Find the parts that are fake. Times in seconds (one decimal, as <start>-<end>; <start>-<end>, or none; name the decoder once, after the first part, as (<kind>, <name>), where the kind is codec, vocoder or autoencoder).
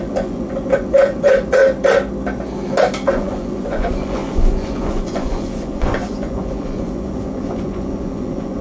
0.0-1.6 (vocoder, Vocos); 3.1-8.6